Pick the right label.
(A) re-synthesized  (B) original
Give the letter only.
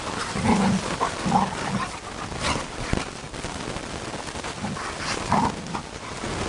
B